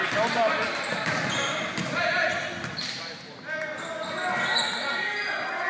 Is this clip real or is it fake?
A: real